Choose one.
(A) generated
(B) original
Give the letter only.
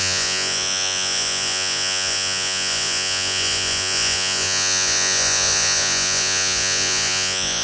A